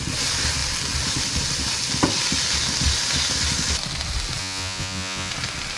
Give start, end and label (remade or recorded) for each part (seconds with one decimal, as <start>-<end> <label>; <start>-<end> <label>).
0.0-4.4 recorded; 4.4-5.3 remade; 5.3-5.8 recorded